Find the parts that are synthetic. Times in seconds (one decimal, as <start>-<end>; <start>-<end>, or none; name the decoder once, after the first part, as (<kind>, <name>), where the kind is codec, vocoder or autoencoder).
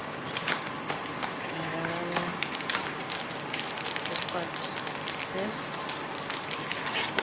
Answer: 0.0-0.7 (codec, DAC); 2.7-3.2